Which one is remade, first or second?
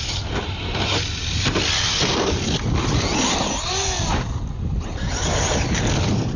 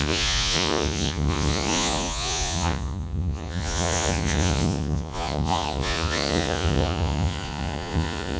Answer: second